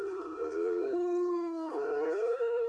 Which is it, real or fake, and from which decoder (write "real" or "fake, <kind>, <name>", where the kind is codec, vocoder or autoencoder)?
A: fake, codec, SNAC